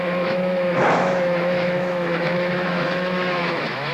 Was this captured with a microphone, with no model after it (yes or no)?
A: no